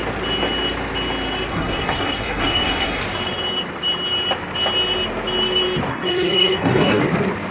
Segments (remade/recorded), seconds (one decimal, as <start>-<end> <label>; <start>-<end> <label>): 0.0-1.5 recorded; 1.5-3.0 remade; 3.0-5.9 recorded; 5.9-7.0 remade; 7.0-7.5 recorded